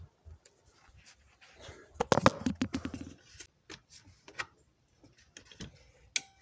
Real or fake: real